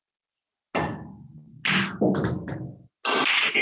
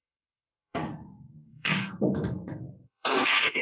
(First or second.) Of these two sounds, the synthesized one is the second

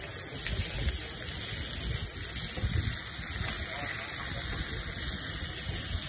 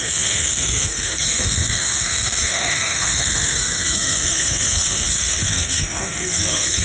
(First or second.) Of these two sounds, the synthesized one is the second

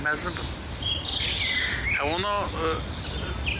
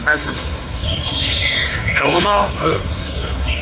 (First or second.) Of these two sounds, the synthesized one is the second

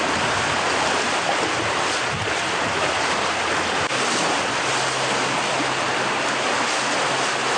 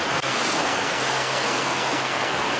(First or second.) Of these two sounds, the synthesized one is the second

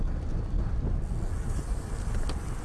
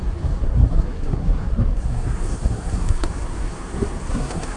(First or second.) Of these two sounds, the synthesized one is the second